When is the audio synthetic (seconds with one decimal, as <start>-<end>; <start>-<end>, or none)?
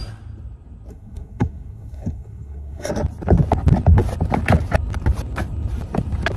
0.9-2.9